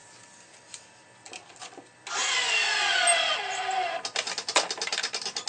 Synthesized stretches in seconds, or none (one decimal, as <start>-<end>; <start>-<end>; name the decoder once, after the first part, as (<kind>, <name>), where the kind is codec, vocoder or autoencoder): none